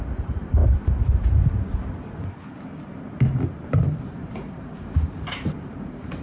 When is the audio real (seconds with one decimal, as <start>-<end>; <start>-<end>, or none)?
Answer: 0.6-3.7